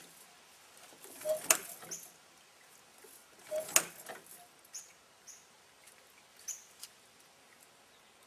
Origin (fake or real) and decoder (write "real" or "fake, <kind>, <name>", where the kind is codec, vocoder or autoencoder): real